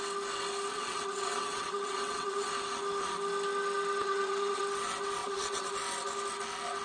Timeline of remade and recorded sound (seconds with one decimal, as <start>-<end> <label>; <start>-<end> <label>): 0.0-0.7 recorded; 0.7-2.5 remade; 2.5-4.0 recorded; 4.0-4.6 remade; 4.6-5.2 recorded; 5.2-5.7 remade; 5.7-6.8 recorded